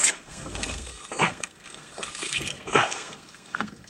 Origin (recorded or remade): remade